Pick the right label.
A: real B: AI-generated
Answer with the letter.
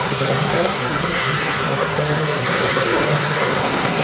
B